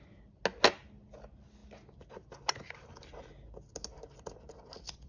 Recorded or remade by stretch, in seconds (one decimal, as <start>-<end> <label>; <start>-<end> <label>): 0.0-5.1 recorded